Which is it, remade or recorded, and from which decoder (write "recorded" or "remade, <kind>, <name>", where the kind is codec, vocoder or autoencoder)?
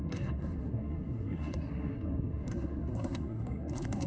remade, codec, SNAC